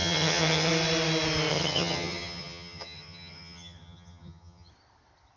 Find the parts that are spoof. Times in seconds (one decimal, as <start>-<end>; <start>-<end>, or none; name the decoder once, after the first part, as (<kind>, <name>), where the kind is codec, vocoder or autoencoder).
0.0-0.7 (vocoder, HiFi-GAN); 1.5-4.7